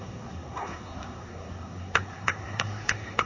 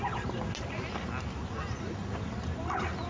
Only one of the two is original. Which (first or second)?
second